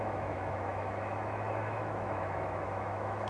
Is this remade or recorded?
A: remade